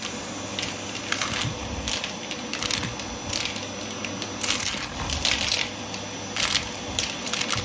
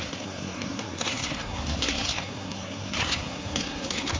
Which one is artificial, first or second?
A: second